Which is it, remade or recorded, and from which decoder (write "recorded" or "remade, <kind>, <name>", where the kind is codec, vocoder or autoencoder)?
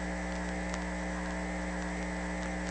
recorded